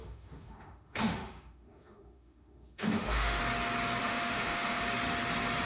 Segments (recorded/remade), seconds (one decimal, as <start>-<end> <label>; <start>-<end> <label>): 0.0-3.4 remade; 3.4-4.0 recorded; 4.0-4.8 remade; 4.8-5.7 recorded